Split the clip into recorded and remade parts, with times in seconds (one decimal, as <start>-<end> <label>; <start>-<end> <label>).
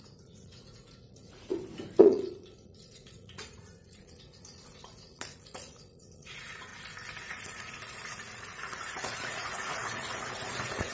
0.0-1.5 remade; 1.5-2.0 recorded; 2.0-6.7 remade; 6.7-7.2 recorded; 7.2-10.9 remade